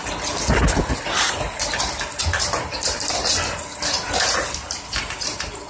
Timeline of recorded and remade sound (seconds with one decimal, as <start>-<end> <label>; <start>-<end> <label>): 0.0-5.7 recorded